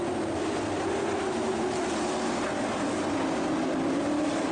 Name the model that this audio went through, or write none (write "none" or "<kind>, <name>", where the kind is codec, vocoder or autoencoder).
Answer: none